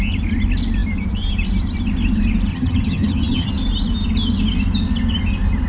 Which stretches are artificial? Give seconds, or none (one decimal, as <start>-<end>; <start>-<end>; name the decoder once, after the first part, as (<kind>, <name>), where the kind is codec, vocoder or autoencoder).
2.5-3.5 (vocoder, HiFi-GAN)